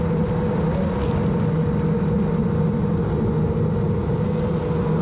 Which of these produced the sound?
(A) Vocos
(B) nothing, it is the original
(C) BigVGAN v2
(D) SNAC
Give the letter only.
B